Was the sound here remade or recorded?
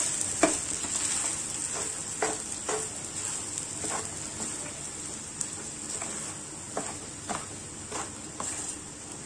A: recorded